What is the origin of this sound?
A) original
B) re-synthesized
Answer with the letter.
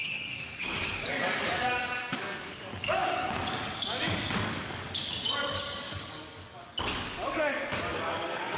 B